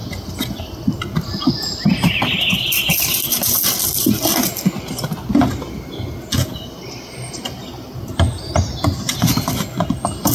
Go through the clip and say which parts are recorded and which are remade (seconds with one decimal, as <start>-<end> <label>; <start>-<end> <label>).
0.0-10.3 recorded